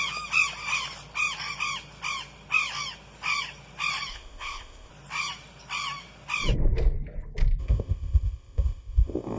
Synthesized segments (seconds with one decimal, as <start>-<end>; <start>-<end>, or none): 4.1-4.9; 7.6-9.4